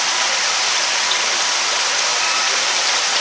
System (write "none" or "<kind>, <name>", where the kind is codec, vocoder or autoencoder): none